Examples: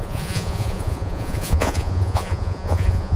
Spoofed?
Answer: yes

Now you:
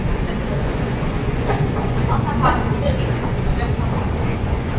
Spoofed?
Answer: yes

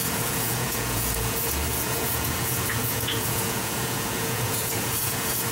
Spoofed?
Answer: yes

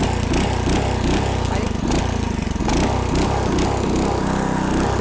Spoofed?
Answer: no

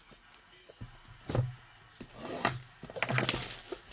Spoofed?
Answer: no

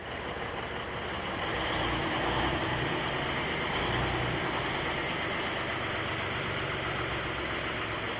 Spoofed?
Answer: no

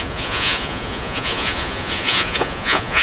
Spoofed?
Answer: yes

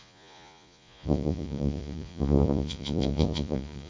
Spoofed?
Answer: yes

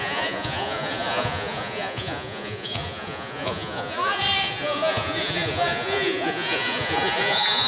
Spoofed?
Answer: yes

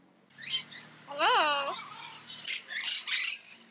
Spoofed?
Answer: no